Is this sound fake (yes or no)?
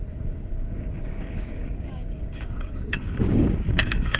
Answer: yes